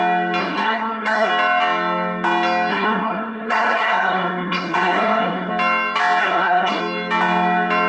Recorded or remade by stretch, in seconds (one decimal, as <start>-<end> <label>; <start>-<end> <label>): 0.0-0.4 recorded; 0.4-1.3 remade; 1.3-2.7 recorded; 2.7-5.5 remade; 5.5-6.2 recorded; 6.2-6.8 remade; 6.8-7.9 recorded